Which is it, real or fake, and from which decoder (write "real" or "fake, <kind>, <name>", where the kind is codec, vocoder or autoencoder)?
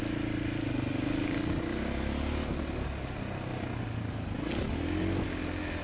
real